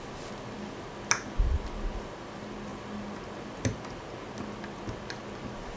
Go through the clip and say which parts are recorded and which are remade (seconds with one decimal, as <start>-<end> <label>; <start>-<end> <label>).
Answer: 0.0-5.8 recorded